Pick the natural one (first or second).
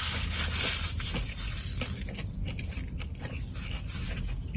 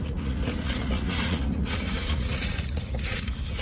first